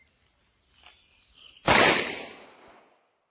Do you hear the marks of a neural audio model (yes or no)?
no